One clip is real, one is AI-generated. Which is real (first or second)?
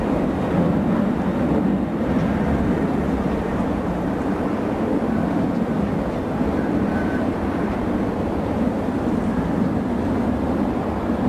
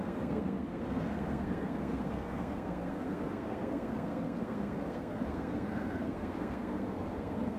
first